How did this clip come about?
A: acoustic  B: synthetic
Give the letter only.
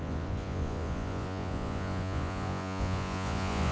B